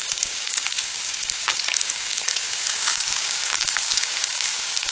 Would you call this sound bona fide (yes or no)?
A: no